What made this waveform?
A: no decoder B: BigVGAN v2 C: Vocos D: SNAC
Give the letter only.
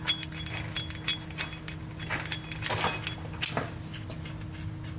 A